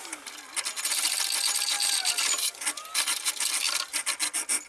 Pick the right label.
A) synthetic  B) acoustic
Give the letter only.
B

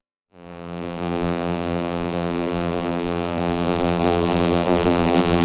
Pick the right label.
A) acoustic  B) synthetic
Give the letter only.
B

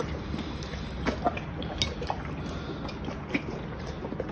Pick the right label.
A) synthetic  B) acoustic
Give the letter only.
B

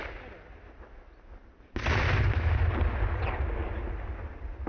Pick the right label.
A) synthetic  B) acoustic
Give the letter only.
B